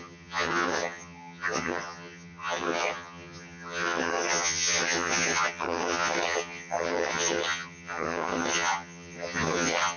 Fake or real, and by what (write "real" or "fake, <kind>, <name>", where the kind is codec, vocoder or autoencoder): fake, vocoder, HiFi-GAN